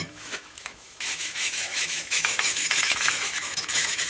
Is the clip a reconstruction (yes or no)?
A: yes